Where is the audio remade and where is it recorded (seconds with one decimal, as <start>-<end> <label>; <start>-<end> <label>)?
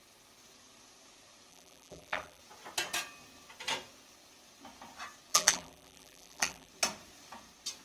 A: 0.0-1.5 recorded; 1.5-2.4 remade; 2.4-5.3 recorded; 5.3-6.7 remade; 6.7-7.8 recorded